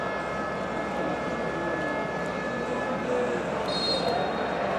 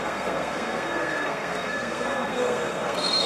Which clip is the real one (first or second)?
first